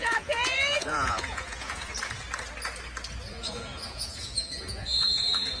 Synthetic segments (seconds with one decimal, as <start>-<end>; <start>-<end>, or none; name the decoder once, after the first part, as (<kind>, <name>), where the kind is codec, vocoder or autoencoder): 0.0-1.9 (vocoder, Vocos); 3.3-5.6